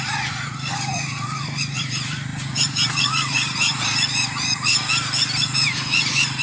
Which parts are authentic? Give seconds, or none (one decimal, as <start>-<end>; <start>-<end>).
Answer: 4.7-5.4